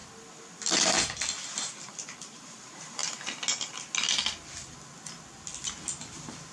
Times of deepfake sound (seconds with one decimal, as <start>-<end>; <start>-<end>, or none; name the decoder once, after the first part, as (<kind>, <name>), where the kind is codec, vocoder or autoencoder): 1.5-3.0 (vocoder, BigVGAN v2)